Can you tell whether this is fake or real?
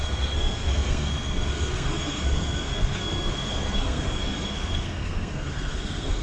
fake